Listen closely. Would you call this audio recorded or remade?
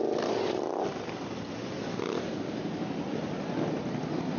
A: recorded